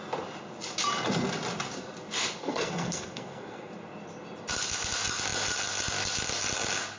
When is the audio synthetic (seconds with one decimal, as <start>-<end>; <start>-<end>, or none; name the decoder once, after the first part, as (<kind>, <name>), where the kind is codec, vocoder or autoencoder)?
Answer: 2.4-3.7 (codec, SNAC)